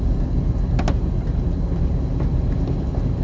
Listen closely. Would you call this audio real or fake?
real